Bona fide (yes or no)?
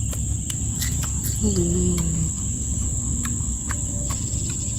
yes